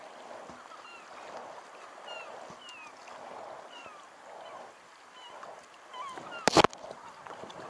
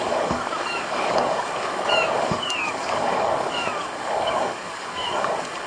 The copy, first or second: second